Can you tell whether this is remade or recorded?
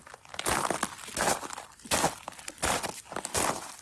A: recorded